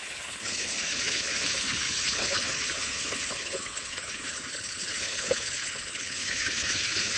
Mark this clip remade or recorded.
remade